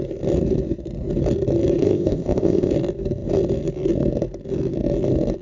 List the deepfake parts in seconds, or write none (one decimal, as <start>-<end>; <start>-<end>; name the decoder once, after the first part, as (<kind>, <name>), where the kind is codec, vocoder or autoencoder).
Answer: 1.8-2.7 (codec, ZipCodec)

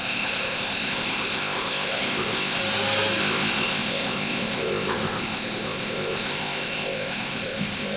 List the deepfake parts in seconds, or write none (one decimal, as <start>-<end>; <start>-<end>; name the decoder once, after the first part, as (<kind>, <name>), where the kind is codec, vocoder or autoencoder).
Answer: 0.0-2.6 (codec, ZipCodec); 3.2-8.0

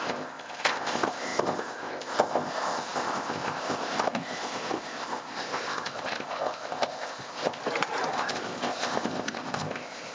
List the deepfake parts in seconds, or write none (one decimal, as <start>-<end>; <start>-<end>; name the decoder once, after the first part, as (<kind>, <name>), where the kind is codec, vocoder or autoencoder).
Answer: 0.0-7.6 (codec, ZipCodec); 8.1-10.1

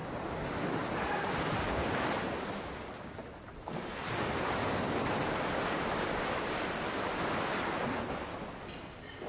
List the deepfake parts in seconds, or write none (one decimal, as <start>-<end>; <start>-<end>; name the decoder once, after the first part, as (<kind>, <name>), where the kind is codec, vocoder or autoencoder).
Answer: none

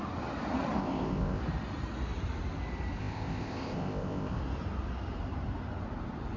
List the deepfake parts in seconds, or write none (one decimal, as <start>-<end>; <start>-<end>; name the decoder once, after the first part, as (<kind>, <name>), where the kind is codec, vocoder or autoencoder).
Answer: 0.8-1.4 (codec, ZipCodec); 3.0-4.4

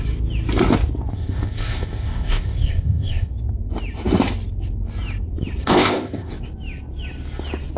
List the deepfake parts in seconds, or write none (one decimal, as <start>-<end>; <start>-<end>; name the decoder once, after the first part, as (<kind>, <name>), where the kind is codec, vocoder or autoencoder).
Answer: 1.1-3.3 (codec, ZipCodec); 5.6-6.3